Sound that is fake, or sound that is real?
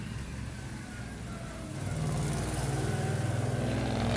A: real